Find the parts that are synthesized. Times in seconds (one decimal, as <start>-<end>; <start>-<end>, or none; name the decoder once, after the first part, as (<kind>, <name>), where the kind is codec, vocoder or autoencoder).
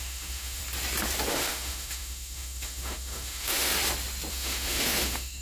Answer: 0.0-0.6 (autoencoder, DAC-VAE); 1.3-3.7; 4.3-5.4